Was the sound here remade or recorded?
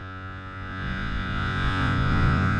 remade